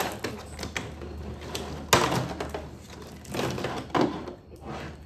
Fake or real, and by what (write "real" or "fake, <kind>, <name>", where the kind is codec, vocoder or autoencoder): real